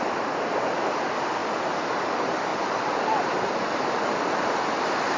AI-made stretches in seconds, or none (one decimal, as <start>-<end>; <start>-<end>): 2.5-3.0